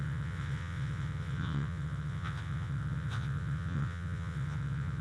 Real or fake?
fake